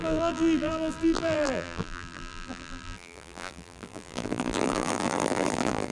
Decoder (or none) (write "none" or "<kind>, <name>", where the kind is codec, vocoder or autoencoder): vocoder, BigVGAN v2